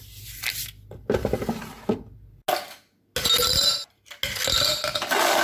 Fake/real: real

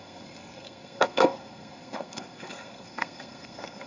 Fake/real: fake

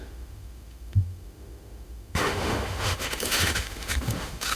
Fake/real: fake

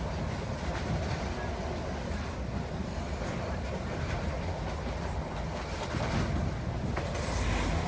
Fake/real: real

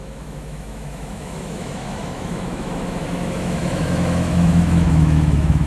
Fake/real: fake